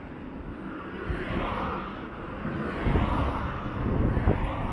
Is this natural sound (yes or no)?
yes